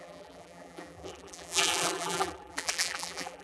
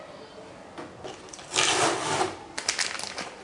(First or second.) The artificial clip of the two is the first